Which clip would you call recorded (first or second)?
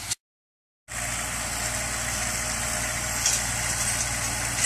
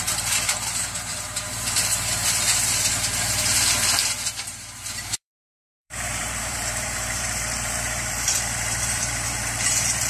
first